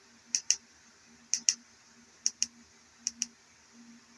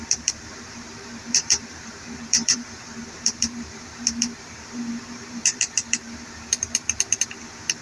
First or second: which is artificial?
second